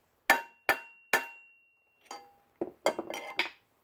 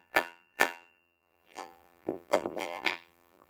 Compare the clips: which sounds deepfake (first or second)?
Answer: second